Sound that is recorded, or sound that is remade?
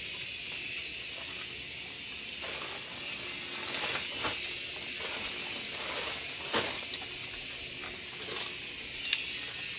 recorded